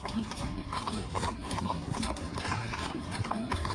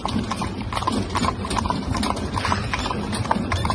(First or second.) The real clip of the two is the second